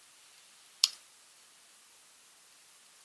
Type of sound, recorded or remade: recorded